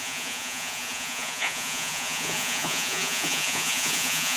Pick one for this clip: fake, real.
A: fake